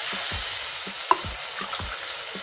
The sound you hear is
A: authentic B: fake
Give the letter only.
A